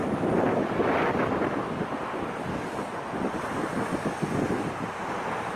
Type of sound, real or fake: real